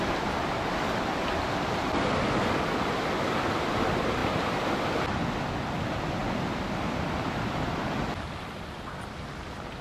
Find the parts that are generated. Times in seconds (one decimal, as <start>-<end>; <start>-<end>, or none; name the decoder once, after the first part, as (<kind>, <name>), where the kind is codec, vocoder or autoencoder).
none